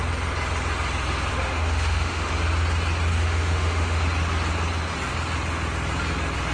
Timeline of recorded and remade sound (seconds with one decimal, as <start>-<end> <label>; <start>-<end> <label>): 0.0-1.3 recorded; 1.3-2.3 remade; 2.3-3.1 recorded; 3.1-4.0 remade; 4.0-6.5 recorded